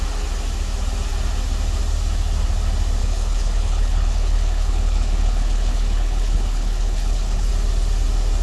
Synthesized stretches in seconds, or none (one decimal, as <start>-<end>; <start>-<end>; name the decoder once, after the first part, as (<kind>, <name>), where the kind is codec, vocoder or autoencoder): 3.0-7.5 (codec, HILCodec)